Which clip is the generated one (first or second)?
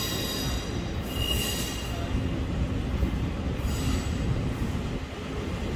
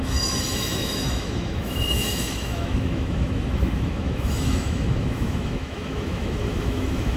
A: second